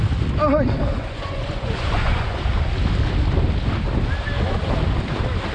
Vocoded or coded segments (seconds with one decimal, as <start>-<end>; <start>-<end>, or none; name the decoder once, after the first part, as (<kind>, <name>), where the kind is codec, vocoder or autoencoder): 0.9-2.4 (vocoder, Vocos)